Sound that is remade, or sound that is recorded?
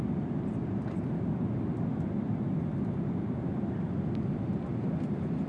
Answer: recorded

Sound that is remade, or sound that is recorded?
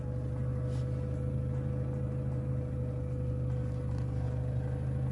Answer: recorded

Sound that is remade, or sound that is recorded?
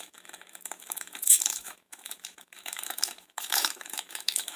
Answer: remade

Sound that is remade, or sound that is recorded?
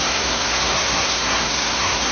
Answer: remade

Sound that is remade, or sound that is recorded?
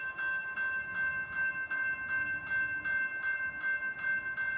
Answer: recorded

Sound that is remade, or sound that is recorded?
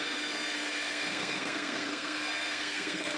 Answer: remade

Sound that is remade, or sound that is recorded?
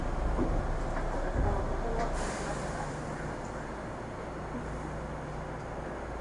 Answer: recorded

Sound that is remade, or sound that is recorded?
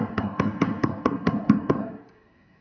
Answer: remade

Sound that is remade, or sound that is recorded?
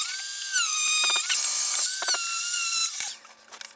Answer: recorded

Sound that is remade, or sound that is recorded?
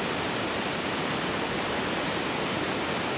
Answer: recorded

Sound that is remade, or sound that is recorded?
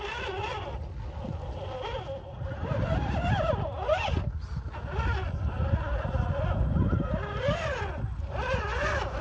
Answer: recorded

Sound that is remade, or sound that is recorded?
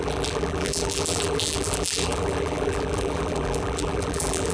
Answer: remade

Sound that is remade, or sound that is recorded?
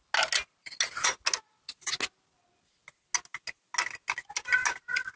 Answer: recorded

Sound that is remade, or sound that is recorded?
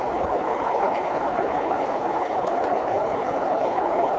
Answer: remade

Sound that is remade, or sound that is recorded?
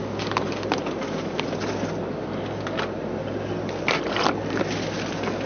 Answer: recorded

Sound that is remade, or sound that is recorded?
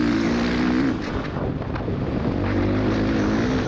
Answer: recorded